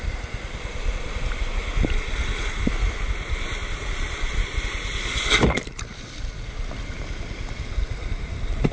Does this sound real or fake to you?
real